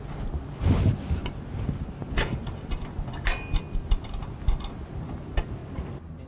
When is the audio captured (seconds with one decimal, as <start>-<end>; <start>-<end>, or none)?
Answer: 0.0-6.3